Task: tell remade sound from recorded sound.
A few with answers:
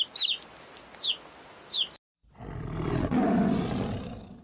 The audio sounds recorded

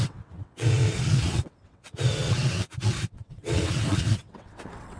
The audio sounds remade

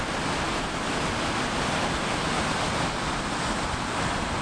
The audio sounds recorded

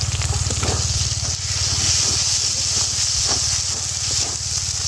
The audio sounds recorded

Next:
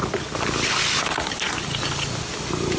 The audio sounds recorded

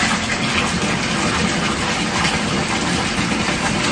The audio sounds recorded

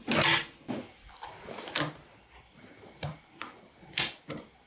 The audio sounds recorded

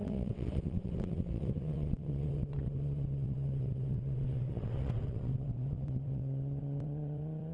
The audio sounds remade